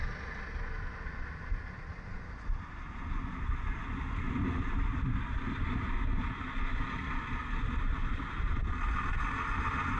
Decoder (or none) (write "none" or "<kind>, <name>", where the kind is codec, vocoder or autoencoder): none